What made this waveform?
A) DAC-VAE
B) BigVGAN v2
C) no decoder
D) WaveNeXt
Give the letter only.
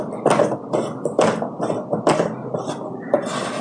C